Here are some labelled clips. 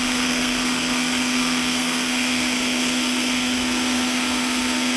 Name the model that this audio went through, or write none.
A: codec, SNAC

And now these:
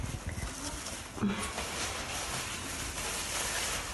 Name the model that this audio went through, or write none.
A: none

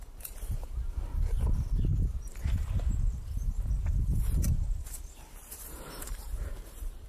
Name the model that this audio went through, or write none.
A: vocoder, BigVGAN v2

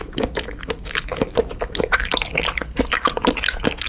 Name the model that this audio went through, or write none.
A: autoencoder, DAC-VAE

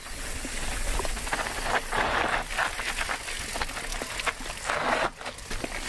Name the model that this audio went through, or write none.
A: none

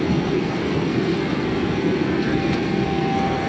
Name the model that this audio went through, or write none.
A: codec, SNAC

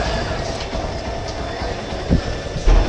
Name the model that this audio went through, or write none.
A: none